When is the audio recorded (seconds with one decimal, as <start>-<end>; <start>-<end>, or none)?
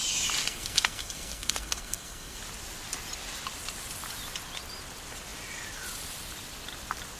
0.0-0.4; 2.4-7.2